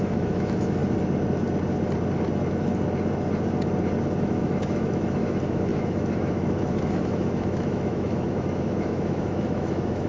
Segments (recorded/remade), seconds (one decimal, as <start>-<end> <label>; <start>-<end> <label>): 0.0-0.8 remade; 0.8-4.2 recorded; 4.2-10.1 remade